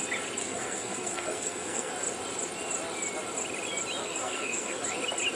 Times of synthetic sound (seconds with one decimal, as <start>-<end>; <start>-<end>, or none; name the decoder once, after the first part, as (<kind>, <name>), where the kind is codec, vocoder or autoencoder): 0.4-1.9 (codec, SNAC); 4.0-4.8